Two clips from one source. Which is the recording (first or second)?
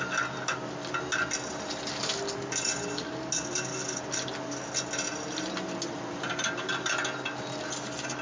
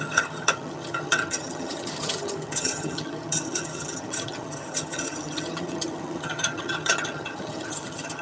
first